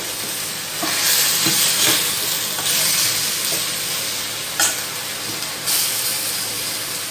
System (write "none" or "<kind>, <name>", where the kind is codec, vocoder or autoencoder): none